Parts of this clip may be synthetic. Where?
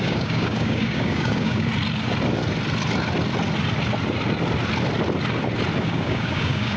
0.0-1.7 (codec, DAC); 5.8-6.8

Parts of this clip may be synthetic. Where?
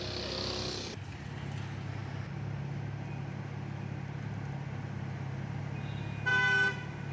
none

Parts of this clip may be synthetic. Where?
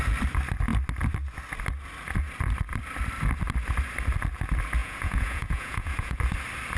4.8-6.2 (vocoder, Vocos)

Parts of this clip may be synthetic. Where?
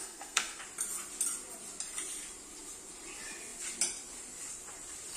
0.0-0.6 (codec, SNAC)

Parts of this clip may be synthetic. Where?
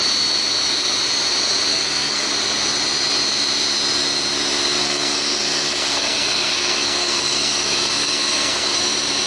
1.7-2.3 (codec, SNAC); 4.8-8.8